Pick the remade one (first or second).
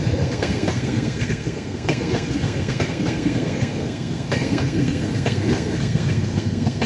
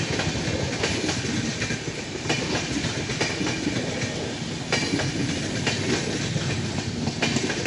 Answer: first